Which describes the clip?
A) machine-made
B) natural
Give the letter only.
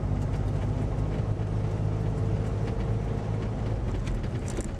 B